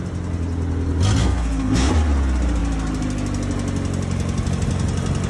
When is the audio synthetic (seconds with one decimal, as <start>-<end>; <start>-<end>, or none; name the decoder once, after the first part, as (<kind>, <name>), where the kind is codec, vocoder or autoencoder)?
1.2-1.9 (codec, SNAC)